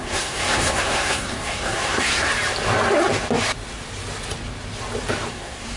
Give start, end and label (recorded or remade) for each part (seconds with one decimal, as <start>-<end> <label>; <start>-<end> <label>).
0.0-2.3 remade; 2.3-5.3 recorded; 5.3-5.8 remade